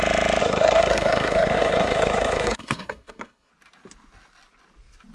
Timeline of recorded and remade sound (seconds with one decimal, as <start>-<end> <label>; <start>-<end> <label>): 0.0-0.4 recorded; 0.4-3.5 remade; 3.5-5.1 recorded